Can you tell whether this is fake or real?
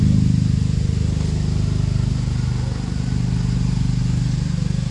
real